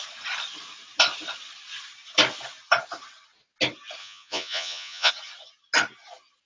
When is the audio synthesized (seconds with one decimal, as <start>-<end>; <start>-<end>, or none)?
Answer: 4.0-5.1

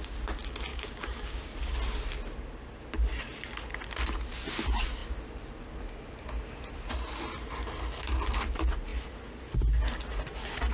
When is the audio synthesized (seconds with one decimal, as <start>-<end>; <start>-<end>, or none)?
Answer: 0.7-1.5

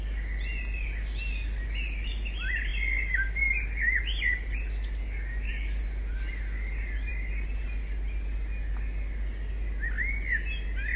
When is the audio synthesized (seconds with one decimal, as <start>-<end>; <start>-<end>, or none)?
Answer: none

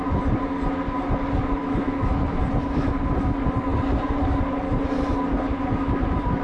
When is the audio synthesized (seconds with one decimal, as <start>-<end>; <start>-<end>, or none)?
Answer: 1.6-2.1

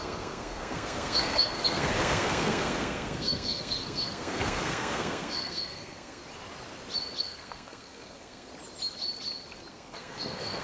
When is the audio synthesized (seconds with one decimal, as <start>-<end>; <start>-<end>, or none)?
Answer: 0.0-6.2; 7.2-8.5; 9.7-10.6

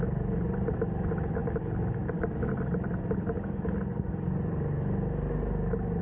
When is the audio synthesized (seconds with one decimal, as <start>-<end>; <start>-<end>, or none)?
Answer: none